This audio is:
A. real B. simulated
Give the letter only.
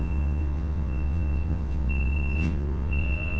B